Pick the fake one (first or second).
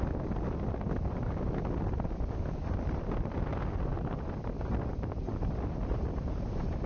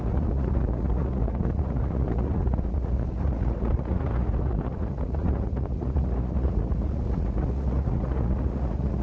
second